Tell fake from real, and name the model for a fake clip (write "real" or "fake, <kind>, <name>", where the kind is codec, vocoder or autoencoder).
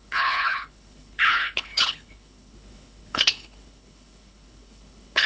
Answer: fake, codec, HILCodec